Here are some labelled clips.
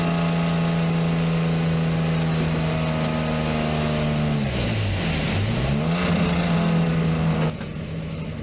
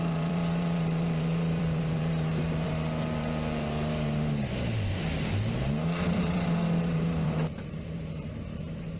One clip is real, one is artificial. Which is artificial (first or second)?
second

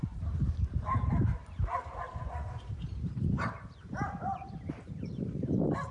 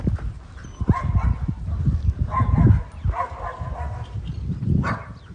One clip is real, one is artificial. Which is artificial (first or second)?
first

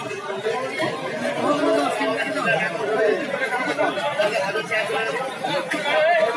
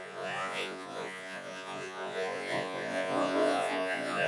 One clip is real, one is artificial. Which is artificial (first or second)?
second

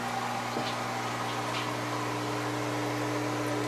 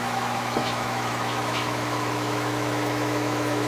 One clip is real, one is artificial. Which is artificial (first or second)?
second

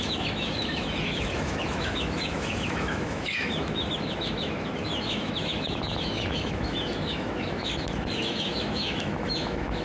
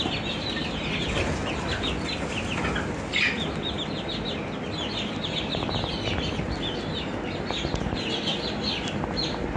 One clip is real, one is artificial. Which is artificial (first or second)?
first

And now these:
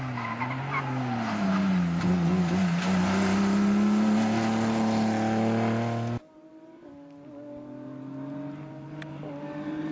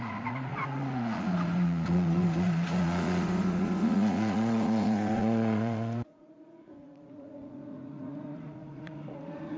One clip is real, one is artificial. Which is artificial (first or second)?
second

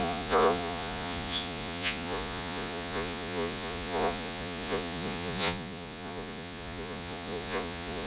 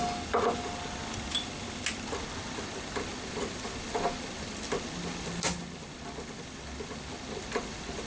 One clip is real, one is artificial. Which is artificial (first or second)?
first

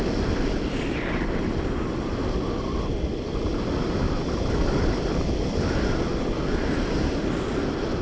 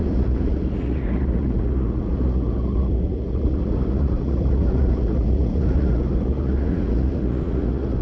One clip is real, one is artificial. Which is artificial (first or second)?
second